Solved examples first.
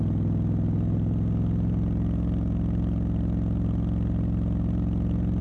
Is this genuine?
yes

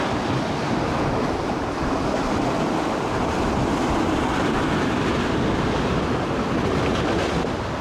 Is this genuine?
yes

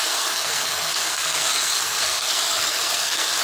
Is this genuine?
no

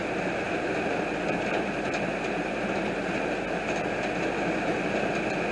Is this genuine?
yes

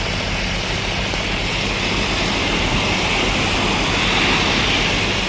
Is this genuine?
yes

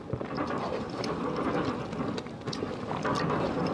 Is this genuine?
yes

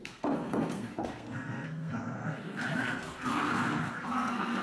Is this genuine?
no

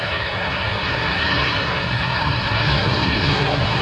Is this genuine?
no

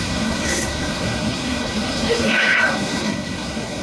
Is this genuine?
no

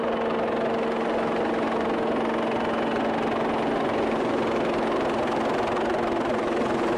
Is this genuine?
yes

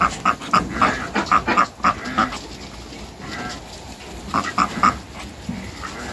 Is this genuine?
yes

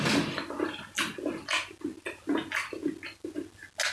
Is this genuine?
yes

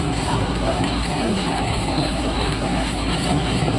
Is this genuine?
no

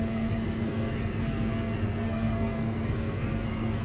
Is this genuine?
no